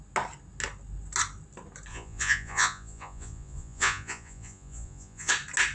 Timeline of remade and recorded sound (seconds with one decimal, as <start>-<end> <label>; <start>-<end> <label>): 0.0-1.9 recorded; 1.9-5.3 remade; 5.3-5.7 recorded